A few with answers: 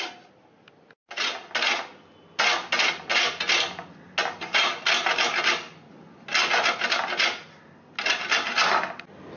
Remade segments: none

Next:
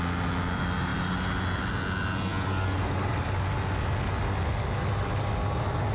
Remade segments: none

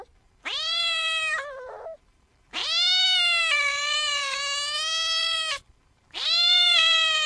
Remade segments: 0.0-2.6 (vocoder, BigVGAN v2); 3.4-4.4; 5.2-7.3

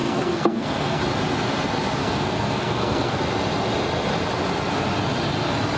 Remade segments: 0.0-1.0 (codec, SNAC); 2.0-3.2

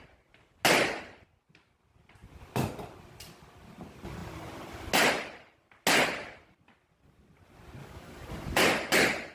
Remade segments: 7.8-8.3 (codec, DAC)

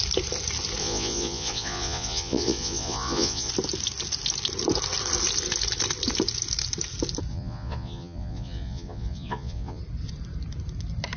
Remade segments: 0.8-3.5 (vocoder, Vocos); 7.3-9.8